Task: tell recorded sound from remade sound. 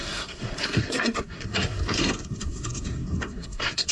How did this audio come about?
remade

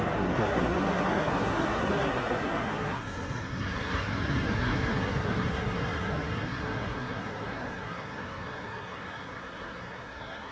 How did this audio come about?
remade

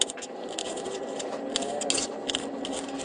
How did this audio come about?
recorded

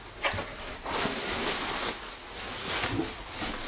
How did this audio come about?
recorded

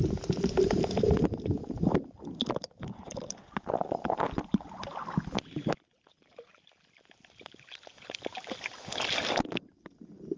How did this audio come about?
recorded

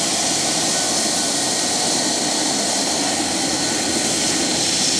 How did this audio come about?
recorded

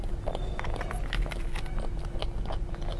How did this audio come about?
recorded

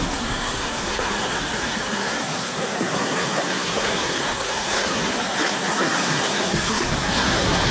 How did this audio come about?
remade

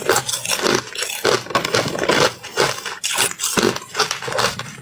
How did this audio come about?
recorded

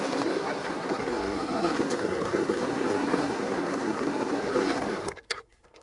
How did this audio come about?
remade